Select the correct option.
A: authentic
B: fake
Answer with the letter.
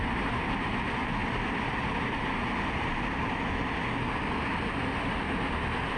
A